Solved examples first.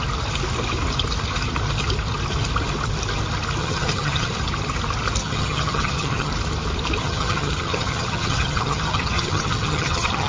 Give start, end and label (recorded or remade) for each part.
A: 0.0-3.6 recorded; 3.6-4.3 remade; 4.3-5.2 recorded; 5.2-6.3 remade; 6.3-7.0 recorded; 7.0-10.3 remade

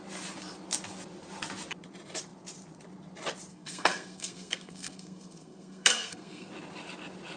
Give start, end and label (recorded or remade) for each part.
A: 0.0-3.5 recorded; 3.5-6.5 remade; 6.5-7.4 recorded

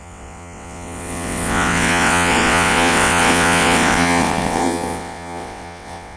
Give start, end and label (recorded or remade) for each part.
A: 0.0-6.2 remade

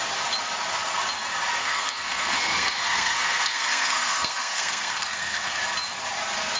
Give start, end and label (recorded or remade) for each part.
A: 0.0-1.6 recorded; 1.6-5.6 remade; 5.6-6.6 recorded

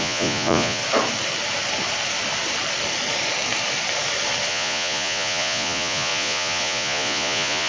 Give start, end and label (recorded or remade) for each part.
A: 0.0-0.8 remade; 0.8-4.5 recorded; 4.5-7.7 remade

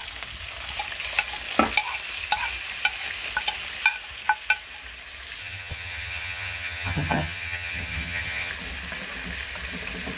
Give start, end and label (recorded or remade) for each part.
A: 0.0-5.4 recorded; 5.4-8.5 remade; 8.5-10.2 recorded

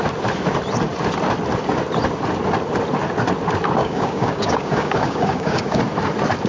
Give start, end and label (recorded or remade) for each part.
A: 0.0-3.8 recorded; 3.8-5.8 remade; 5.8-6.5 recorded